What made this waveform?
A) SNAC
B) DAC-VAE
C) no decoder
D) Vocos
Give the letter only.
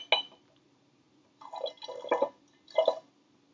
C